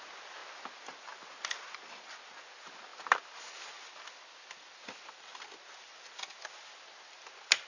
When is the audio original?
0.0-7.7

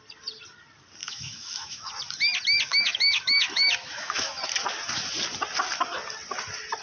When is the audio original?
0.0-1.0; 1.9-2.7; 4.4-6.8

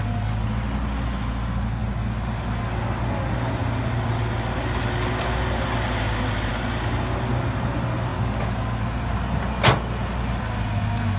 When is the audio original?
0.0-11.2